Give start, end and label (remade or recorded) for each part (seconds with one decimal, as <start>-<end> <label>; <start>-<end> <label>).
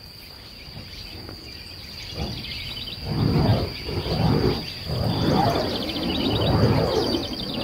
0.0-7.6 recorded